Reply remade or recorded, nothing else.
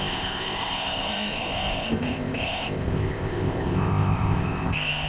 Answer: remade